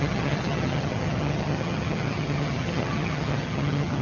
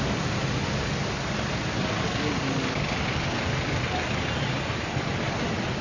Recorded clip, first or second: second